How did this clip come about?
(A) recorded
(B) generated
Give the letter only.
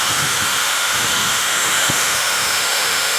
B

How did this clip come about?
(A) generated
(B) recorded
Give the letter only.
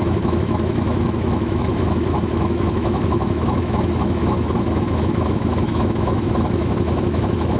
A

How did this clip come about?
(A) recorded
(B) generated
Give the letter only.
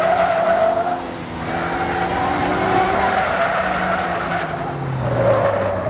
A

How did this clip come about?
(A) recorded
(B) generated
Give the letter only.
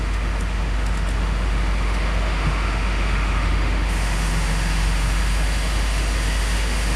B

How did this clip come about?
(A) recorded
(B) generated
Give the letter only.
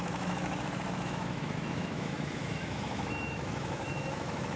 B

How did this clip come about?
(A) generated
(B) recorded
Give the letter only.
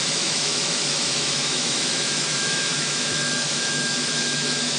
A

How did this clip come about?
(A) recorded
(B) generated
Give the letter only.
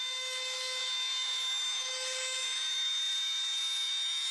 B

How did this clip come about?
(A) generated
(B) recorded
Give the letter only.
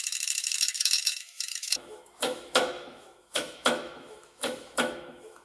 A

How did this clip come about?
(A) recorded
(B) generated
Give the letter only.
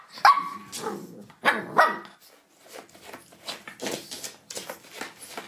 A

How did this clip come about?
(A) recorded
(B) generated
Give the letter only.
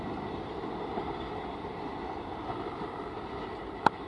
A